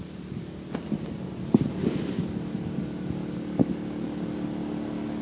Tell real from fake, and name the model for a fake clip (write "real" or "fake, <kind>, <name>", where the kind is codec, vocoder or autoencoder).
real